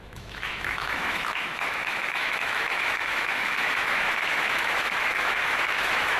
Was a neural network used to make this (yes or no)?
yes